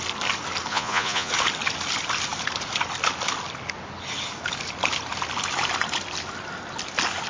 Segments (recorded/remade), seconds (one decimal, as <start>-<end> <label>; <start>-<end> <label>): 0.0-0.7 recorded; 0.7-1.3 remade; 1.3-7.3 recorded